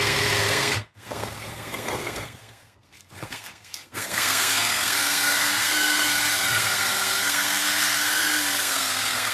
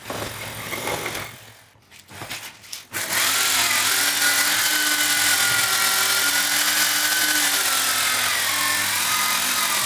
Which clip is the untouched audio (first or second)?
second